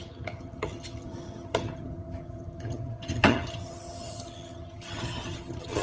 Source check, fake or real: fake